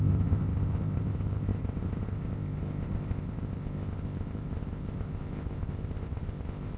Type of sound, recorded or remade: remade